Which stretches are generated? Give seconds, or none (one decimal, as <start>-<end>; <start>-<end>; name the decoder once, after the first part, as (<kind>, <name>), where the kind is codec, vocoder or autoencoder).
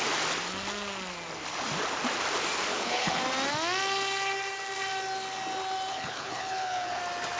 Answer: 2.7-3.2 (codec, HILCodec); 5.9-7.0